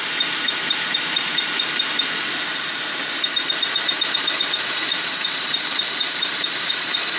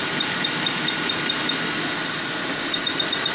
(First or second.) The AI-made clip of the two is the first